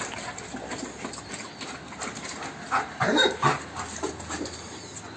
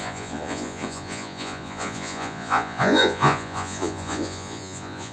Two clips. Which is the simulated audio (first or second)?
second